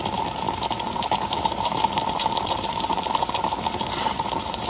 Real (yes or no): no